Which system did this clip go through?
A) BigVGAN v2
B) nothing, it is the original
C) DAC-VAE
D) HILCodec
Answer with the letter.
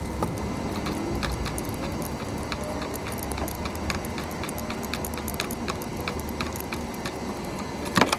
B